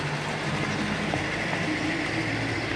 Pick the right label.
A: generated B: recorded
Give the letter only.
B